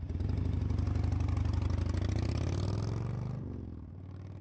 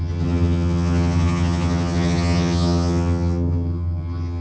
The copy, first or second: second